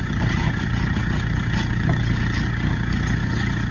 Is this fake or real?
fake